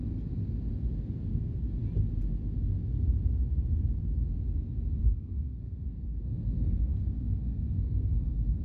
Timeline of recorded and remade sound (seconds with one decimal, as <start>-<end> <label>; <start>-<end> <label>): 0.0-1.3 recorded; 1.3-1.8 remade; 1.8-5.0 recorded; 5.0-8.6 remade